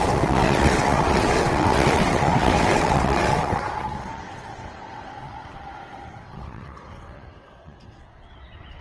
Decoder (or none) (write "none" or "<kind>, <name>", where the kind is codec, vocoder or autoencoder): vocoder, WaveNeXt